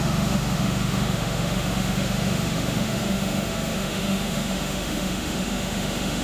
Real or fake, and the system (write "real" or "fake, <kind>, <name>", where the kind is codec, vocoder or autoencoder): fake, autoencoder, DAC-VAE